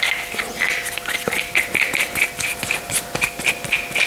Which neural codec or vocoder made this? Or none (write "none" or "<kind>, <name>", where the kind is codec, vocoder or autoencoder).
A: none